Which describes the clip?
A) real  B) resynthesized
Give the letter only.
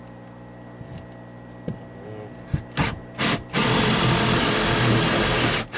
A